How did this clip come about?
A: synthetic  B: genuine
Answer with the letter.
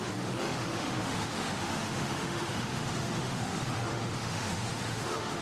A